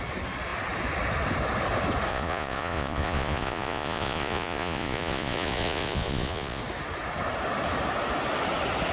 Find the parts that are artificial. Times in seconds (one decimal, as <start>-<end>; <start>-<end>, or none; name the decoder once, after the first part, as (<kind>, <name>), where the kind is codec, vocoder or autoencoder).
2.1-6.6 (vocoder, Vocos)